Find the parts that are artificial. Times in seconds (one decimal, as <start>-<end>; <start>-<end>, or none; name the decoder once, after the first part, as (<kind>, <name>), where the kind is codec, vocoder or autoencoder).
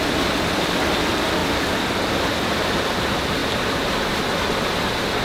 none